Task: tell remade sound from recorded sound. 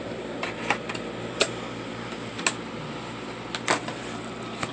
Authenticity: recorded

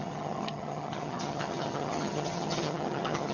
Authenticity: remade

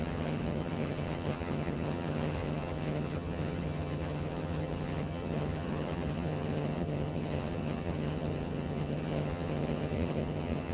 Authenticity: remade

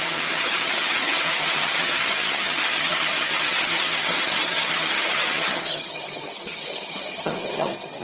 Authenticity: remade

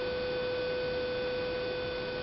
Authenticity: recorded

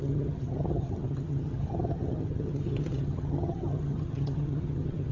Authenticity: remade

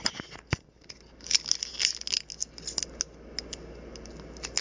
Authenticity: recorded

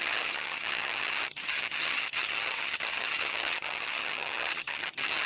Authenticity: remade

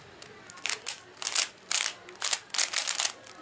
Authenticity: recorded